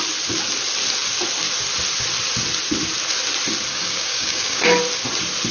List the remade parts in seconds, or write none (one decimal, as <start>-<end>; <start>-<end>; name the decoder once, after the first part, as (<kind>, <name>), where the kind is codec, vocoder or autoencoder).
3.7-4.6 (codec, DAC)